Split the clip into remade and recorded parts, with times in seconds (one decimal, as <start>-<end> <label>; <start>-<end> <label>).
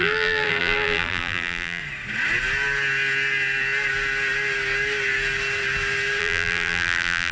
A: 0.0-1.8 remade; 1.8-6.2 recorded; 6.2-7.3 remade